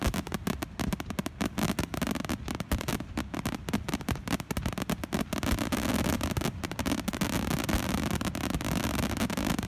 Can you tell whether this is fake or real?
real